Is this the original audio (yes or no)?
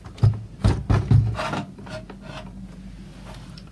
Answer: yes